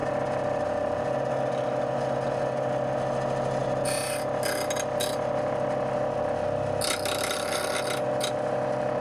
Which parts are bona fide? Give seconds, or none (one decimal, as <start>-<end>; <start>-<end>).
0.0-9.0